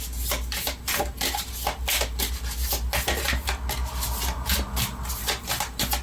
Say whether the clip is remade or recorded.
recorded